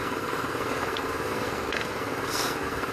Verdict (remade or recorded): remade